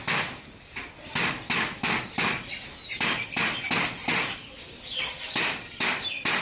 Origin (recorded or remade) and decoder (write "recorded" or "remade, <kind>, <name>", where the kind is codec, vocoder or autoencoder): recorded